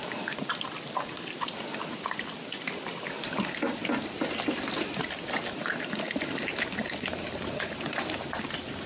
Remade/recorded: recorded